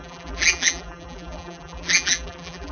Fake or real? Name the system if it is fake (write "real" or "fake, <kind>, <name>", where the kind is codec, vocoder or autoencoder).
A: fake, vocoder, BigVGAN v2